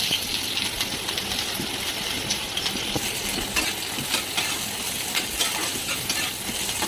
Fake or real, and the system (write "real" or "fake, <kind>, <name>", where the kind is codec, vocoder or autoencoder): real